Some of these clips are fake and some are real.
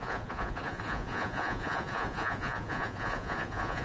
fake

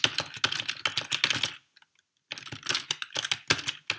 real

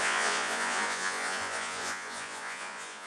fake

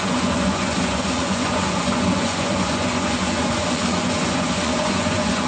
fake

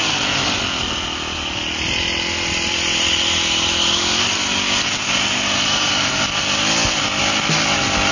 real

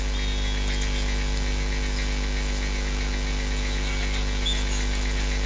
real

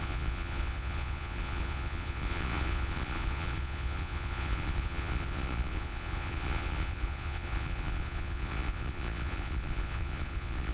fake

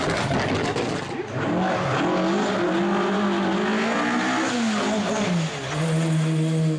real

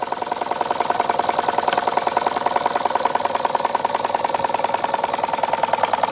real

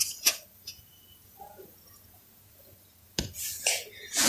fake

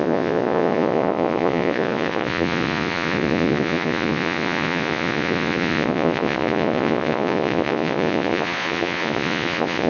fake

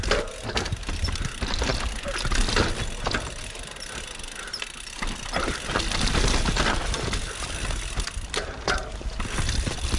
real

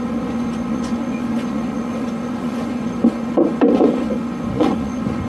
fake